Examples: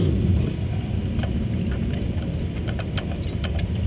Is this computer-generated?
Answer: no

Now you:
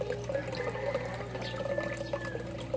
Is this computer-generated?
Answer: no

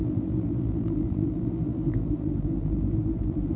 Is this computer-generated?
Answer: yes